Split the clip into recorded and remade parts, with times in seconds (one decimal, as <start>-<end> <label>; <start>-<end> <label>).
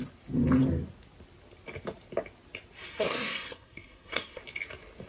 0.0-2.9 recorded; 2.9-4.4 remade; 4.4-5.1 recorded